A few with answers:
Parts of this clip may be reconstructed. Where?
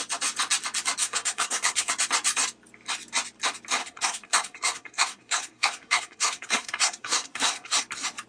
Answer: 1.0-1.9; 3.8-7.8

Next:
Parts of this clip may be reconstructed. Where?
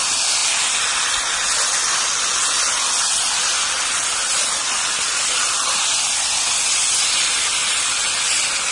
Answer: none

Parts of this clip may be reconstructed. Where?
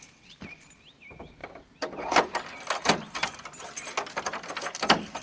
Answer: none